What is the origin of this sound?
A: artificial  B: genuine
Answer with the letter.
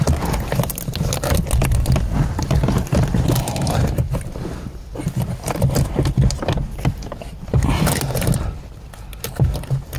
B